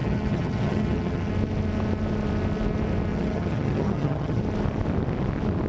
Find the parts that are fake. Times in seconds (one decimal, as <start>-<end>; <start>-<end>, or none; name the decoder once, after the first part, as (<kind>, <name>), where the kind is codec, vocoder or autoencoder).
0.0-1.3 (vocoder, HiFi-GAN); 3.1-4.4